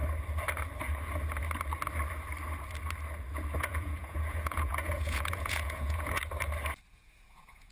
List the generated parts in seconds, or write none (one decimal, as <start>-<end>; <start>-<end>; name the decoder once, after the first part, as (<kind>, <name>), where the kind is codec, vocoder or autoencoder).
3.6-6.2 (vocoder, Vocos); 6.9-7.7